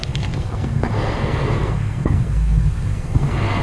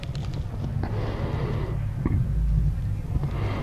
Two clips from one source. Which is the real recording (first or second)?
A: second